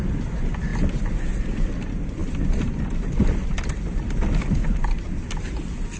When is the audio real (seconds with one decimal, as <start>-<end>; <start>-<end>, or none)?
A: 0.0-2.2; 5.4-6.0